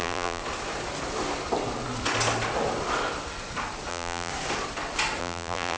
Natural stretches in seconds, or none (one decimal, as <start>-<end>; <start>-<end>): 0.4-3.9; 4.3-5.2